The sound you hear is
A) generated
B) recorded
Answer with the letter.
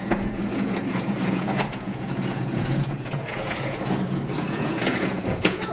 A